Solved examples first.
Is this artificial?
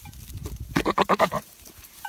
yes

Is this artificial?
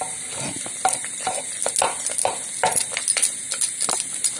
no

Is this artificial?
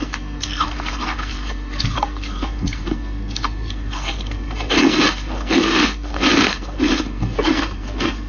yes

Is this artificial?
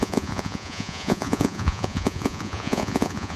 yes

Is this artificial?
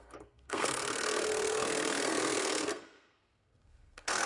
yes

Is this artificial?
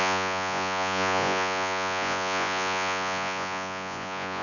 yes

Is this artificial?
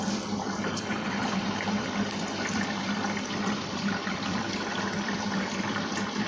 yes